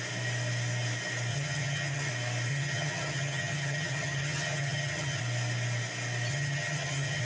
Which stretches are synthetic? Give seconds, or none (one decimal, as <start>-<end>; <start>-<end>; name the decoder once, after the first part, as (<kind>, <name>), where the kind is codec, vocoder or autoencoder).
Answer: 1.3-2.1 (vocoder, HiFi-GAN); 2.5-5.2; 6.3-7.2